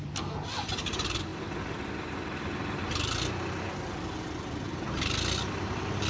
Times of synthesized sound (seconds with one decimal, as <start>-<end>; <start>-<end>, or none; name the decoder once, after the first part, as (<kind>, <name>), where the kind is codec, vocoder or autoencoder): none

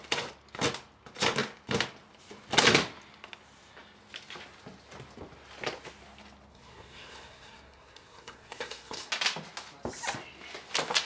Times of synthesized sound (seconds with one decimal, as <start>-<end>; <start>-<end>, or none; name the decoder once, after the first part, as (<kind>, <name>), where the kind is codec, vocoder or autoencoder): 6.5-9.1 (codec, SNAC)

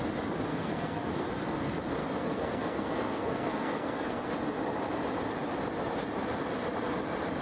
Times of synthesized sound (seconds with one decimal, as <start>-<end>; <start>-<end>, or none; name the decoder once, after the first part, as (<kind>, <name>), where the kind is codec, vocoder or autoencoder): 0.5-1.3 (codec, SNAC); 2.0-4.3

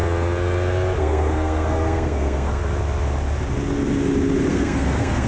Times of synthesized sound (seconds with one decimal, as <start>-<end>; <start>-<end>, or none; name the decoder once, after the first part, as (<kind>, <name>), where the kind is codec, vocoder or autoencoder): 1.0-2.6 (codec, SNAC); 4.5-5.3

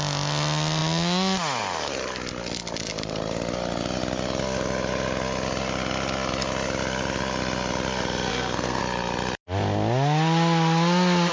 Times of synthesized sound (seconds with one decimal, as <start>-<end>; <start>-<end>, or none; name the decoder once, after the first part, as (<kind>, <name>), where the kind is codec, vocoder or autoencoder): 8.3-8.8 (codec, SNAC)

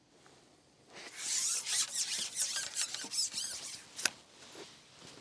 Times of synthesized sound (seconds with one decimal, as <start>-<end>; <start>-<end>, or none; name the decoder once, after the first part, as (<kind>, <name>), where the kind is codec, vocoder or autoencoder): none